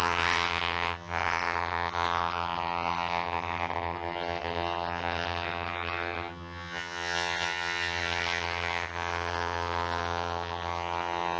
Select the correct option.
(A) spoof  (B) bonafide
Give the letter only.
A